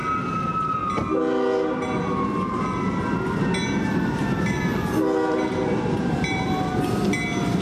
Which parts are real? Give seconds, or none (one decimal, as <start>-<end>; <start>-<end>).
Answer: 0.0-7.6